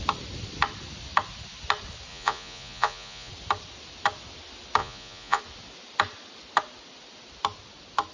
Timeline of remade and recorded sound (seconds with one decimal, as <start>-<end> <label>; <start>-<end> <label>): 0.0-2.1 recorded; 2.1-3.3 remade; 3.3-4.8 recorded; 4.8-5.4 remade; 5.4-8.1 recorded